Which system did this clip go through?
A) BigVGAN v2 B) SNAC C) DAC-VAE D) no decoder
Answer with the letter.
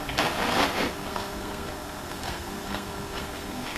B